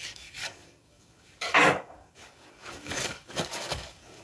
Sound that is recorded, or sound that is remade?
remade